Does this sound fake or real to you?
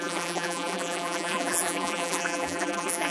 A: fake